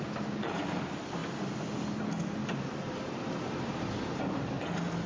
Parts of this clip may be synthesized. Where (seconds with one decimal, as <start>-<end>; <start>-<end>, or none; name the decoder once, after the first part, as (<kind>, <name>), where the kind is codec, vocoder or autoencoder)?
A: 2.4-4.2 (vocoder, BigVGAN v2)